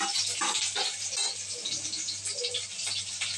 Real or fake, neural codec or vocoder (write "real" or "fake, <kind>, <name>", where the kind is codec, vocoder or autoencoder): real